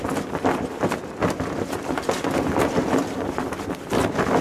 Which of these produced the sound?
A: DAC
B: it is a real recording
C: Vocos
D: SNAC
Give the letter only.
B